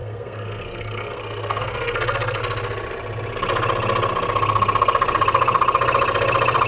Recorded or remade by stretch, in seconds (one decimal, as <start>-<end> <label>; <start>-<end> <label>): 0.0-2.4 remade; 2.4-6.7 recorded

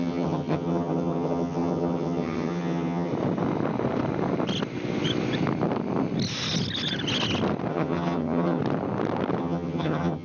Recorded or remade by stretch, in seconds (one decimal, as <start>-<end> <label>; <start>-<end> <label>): 0.0-3.1 remade; 3.1-7.7 recorded; 7.7-8.6 remade; 8.6-9.4 recorded; 9.4-10.2 remade

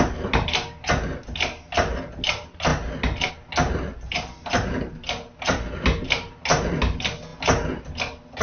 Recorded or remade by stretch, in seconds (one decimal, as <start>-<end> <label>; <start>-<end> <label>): 0.0-8.4 recorded

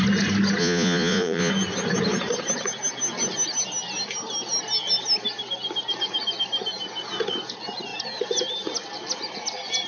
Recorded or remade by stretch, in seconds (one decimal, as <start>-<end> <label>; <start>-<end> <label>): 0.0-0.6 recorded; 0.6-1.5 remade; 1.5-9.9 recorded